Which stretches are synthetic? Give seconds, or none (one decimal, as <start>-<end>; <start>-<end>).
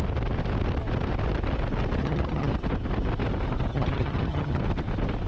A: 2.0-2.5; 3.7-4.6